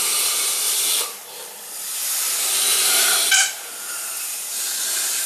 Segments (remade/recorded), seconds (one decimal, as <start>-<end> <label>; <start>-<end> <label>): 0.0-2.7 recorded; 2.7-3.7 remade; 3.7-5.3 recorded